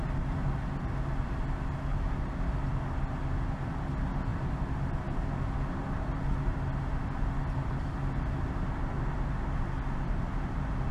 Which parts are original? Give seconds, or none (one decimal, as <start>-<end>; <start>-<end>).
0.0-10.9